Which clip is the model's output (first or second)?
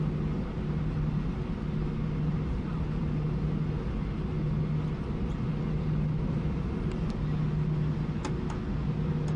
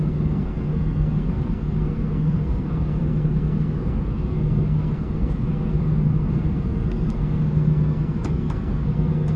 second